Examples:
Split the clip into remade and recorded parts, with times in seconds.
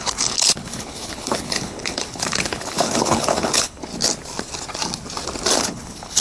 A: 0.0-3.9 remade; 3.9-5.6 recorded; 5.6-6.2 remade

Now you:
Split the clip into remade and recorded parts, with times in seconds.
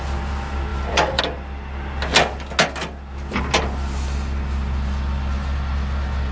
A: 0.0-0.7 recorded; 0.7-1.2 remade; 1.2-6.3 recorded